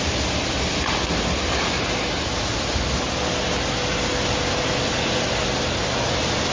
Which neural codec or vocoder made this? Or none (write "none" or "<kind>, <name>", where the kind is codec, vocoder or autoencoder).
none